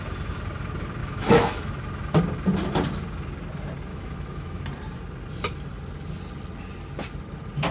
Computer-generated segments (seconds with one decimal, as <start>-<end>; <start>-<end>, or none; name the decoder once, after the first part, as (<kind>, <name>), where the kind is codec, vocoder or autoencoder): 1.0-1.7 (autoencoder, DAC-VAE); 3.9-4.6